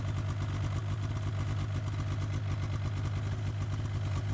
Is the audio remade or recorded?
recorded